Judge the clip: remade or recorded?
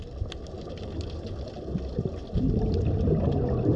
recorded